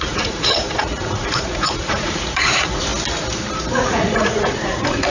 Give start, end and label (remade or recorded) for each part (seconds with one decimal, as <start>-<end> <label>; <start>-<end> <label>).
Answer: 0.0-2.9 remade; 2.9-3.7 recorded; 3.7-5.1 remade